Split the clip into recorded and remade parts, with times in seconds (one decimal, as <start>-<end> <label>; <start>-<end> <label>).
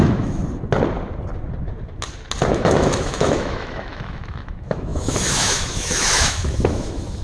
0.0-0.4 remade; 0.4-2.5 recorded; 2.5-7.2 remade